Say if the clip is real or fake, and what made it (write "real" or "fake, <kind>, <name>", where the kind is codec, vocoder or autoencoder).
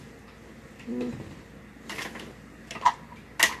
real